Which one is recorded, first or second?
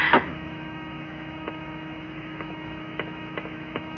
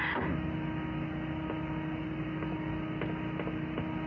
second